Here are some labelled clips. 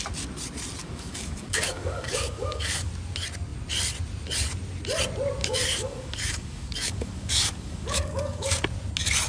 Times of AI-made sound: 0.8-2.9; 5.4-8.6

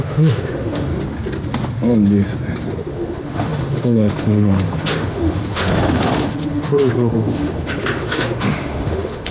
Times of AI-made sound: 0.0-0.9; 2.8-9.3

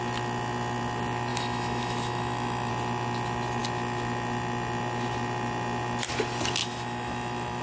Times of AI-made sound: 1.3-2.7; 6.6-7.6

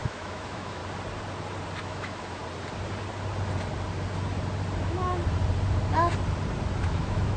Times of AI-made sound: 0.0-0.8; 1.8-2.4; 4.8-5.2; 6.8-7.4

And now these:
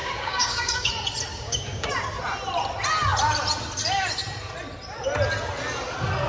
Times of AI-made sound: 0.0-0.9; 1.3-1.9

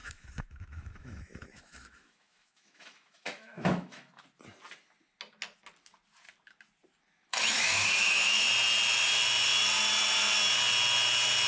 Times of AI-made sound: 0.0-4.2; 7.3-8.5

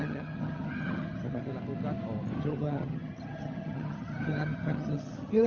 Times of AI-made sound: 0.0-1.5; 2.4-5.5

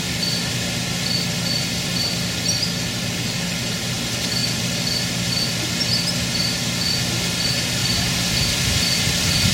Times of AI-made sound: 7.8-8.4